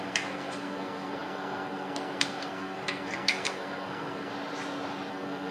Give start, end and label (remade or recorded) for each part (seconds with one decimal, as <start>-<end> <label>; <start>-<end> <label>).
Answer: 0.0-4.3 remade; 4.3-5.1 recorded; 5.1-5.5 remade